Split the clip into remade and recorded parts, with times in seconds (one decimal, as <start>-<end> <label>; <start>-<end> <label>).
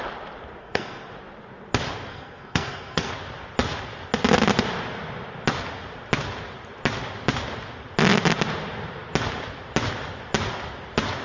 0.0-0.6 recorded; 0.6-1.1 remade; 1.1-2.1 recorded; 2.1-3.1 remade; 3.1-11.2 recorded